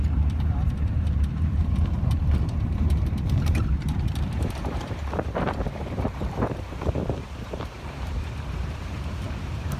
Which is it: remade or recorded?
remade